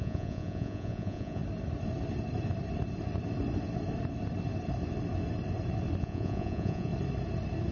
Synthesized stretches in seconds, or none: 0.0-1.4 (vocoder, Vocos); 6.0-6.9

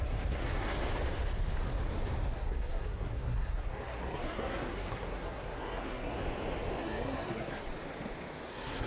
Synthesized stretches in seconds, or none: 0.0-0.8 (codec, SNAC); 2.3-6.2; 6.8-7.7; 8.5-8.9

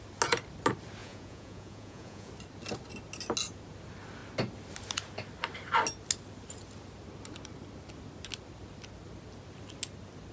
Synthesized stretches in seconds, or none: 1.0-2.3 (vocoder, Vocos)

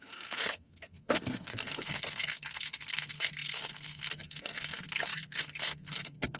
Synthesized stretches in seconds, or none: 0.0-6.4 (codec, SNAC)

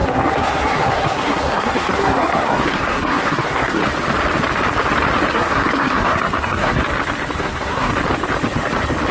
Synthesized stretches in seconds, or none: 0.0-3.8 (codec, SNAC); 5.3-6.8; 7.4-7.9

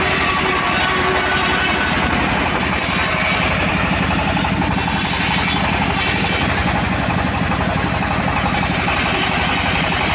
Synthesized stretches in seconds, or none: 6.6-7.4 (vocoder, Vocos)